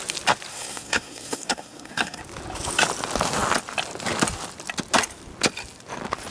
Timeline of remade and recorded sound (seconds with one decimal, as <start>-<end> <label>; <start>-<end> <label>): 0.0-0.5 recorded; 0.5-2.2 remade; 2.2-6.3 recorded